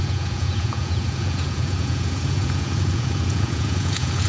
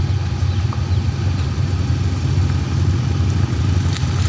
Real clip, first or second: second